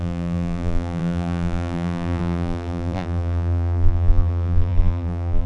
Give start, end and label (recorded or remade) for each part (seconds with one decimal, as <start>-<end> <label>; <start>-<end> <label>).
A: 0.0-5.5 remade